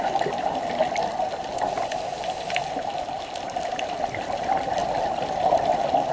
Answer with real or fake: fake